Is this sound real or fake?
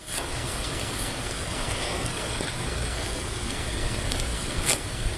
fake